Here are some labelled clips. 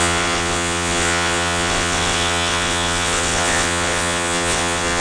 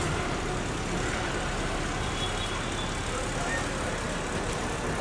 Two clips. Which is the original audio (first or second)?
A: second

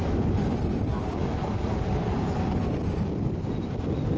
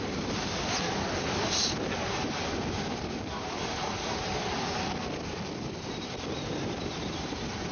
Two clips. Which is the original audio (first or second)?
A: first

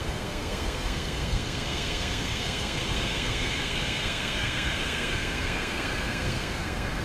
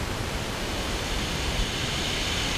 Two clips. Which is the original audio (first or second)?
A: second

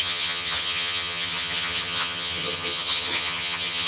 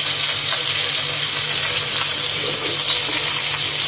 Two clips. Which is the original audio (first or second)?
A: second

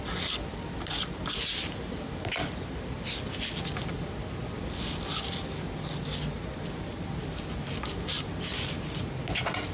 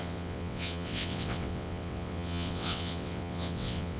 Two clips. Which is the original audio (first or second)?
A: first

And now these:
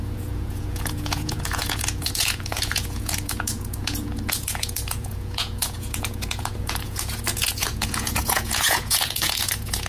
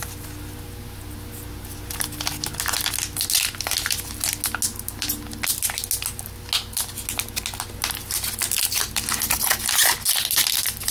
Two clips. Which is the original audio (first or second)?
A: second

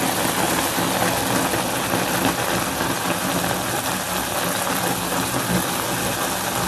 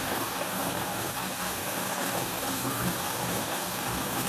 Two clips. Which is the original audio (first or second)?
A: first